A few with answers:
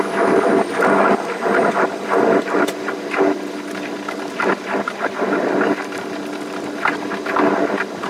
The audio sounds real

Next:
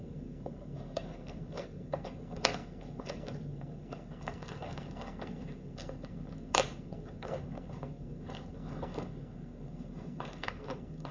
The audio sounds fake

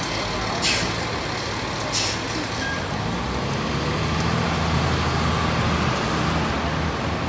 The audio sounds real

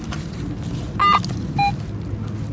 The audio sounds real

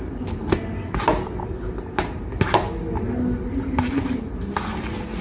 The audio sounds real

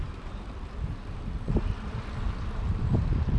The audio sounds fake